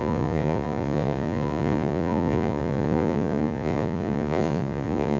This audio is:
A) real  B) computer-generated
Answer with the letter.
B